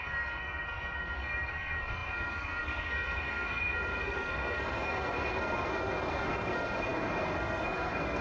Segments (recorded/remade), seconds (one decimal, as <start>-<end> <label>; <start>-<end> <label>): 0.0-8.2 remade

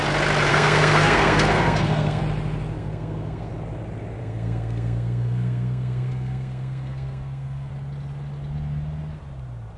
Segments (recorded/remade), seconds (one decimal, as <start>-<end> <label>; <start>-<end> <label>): 0.0-0.5 recorded; 0.5-2.2 remade; 2.2-2.8 recorded; 2.8-3.5 remade; 3.5-4.2 recorded; 4.2-7.7 remade; 7.7-9.8 recorded